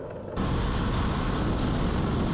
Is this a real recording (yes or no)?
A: yes